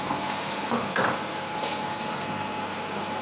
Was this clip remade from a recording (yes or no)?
yes